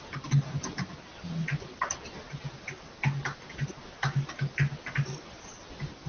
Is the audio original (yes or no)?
yes